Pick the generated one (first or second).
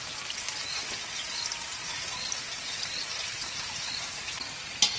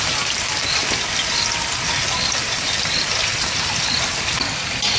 second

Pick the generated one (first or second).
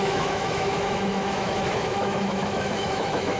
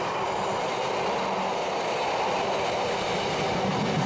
first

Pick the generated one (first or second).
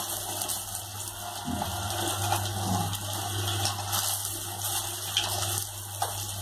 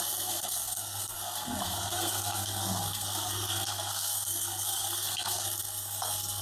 second